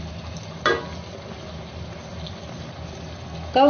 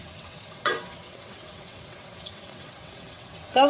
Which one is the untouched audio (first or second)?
first